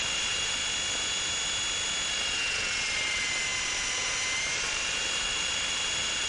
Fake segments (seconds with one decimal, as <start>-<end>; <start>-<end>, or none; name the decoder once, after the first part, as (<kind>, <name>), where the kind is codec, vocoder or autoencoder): 0.0-0.6 (vocoder, BigVGAN v2); 2.8-6.3